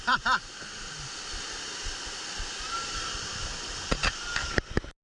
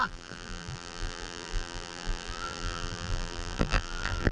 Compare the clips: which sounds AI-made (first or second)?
second